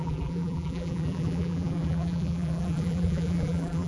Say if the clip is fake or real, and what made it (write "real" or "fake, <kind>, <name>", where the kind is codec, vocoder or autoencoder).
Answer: fake, vocoder, BigVGAN v2